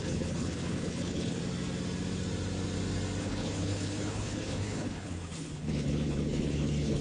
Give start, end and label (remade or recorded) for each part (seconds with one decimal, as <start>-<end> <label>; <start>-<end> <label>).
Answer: 0.0-1.4 remade; 1.4-3.2 recorded; 3.2-7.0 remade